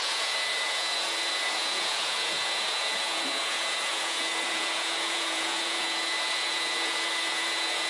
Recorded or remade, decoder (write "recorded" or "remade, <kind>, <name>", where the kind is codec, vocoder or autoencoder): remade, vocoder, Vocos